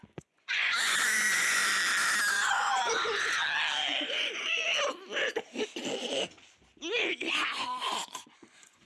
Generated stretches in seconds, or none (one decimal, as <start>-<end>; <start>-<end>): 0.0-1.6; 2.3-3.4; 4.0-4.6; 7.3-8.8